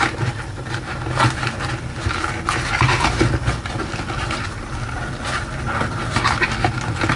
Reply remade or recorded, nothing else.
recorded